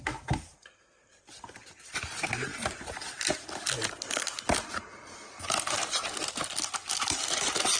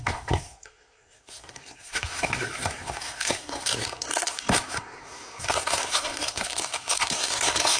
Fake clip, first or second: second